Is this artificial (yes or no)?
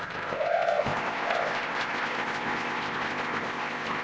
yes